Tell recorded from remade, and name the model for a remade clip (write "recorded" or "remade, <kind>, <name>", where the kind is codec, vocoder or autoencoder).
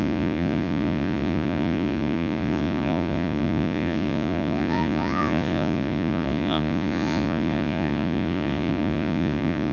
remade, vocoder, Vocos